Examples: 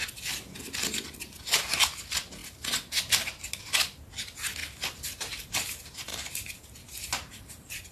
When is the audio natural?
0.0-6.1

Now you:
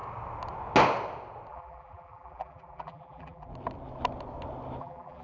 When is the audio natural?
0.0-1.5; 3.5-4.8

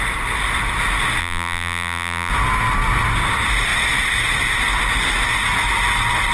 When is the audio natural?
0.0-1.2; 2.3-6.3

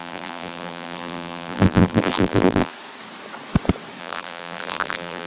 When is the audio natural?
2.7-4.0

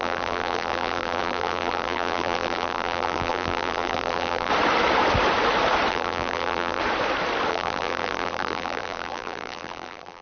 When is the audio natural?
4.5-5.9; 6.8-7.5

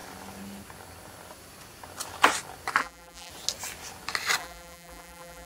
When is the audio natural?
0.0-2.8; 3.3-4.4